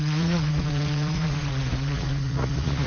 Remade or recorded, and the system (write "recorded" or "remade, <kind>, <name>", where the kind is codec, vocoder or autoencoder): remade, vocoder, Vocos